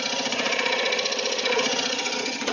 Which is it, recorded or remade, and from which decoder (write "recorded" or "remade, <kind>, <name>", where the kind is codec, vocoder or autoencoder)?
remade, vocoder, Vocos